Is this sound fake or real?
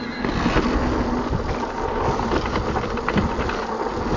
real